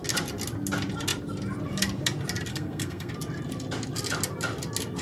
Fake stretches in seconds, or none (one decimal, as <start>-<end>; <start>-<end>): 2.5-3.1